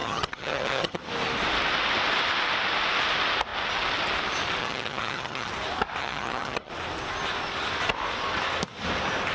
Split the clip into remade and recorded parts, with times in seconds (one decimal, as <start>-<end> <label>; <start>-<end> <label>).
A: 0.0-1.0 remade; 1.0-4.6 recorded; 4.6-5.5 remade; 5.5-6.0 recorded; 6.0-6.7 remade; 6.7-9.3 recorded

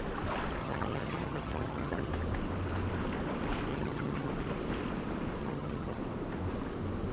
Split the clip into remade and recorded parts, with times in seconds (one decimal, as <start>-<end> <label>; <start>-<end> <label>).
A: 0.0-0.6 recorded; 0.6-2.1 remade; 2.1-3.7 recorded; 3.7-4.3 remade; 4.3-5.4 recorded; 5.4-6.0 remade; 6.0-7.1 recorded

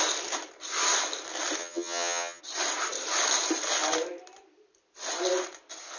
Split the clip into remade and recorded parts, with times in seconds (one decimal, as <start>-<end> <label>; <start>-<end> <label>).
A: 0.0-1.6 recorded; 1.6-2.4 remade; 2.4-6.0 recorded

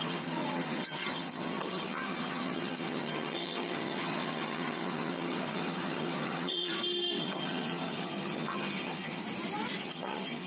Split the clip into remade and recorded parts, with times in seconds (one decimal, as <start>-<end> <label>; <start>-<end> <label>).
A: 0.0-6.7 remade; 6.7-7.2 recorded; 7.2-9.2 remade; 9.2-9.8 recorded; 9.8-10.5 remade

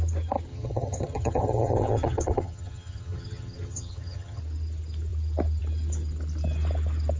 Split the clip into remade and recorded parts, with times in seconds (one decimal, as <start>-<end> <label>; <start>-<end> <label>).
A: 0.0-0.5 recorded; 0.5-4.4 remade; 4.4-7.2 recorded

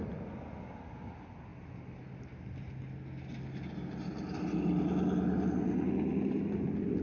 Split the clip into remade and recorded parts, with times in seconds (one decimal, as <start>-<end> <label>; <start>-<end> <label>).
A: 0.0-7.0 recorded

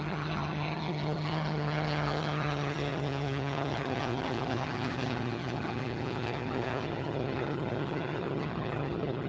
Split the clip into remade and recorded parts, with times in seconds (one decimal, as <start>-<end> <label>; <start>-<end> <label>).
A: 0.0-9.3 remade

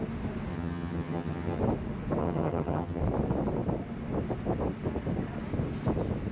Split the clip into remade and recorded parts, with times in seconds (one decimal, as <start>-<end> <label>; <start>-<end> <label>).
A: 0.0-0.5 recorded; 0.5-1.6 remade; 1.6-2.2 recorded; 2.2-3.0 remade; 3.0-6.3 recorded